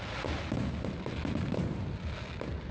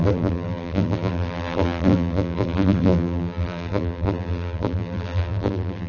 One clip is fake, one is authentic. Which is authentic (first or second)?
first